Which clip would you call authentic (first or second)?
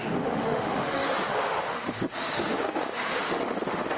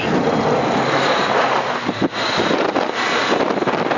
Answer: second